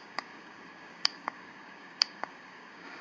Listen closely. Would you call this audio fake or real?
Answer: fake